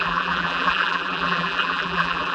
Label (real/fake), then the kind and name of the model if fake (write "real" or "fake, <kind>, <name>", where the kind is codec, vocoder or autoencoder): fake, vocoder, BigVGAN v2